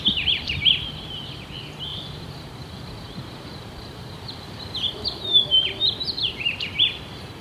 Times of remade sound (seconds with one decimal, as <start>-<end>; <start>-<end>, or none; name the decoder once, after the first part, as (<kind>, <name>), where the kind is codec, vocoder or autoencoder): 1.9-5.4 (vocoder, BigVGAN v2)